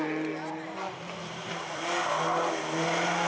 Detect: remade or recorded recorded